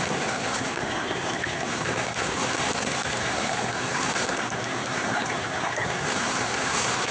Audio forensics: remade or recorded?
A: remade